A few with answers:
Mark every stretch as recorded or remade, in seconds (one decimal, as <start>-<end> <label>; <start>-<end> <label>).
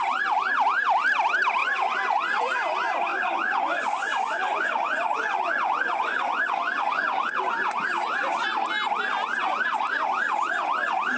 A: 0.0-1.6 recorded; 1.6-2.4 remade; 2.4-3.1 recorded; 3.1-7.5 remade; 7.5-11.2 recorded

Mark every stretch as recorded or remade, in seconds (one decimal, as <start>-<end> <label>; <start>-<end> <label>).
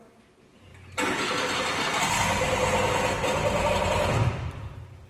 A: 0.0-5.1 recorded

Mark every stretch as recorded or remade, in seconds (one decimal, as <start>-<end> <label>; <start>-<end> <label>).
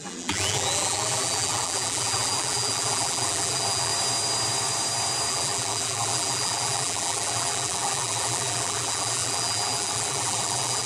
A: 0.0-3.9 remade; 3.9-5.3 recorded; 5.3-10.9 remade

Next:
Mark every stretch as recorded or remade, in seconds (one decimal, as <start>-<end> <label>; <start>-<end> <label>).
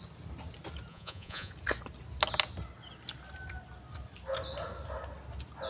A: 0.0-0.9 recorded; 0.9-1.5 remade; 1.5-5.7 recorded